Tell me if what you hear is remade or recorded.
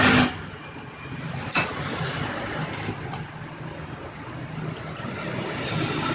recorded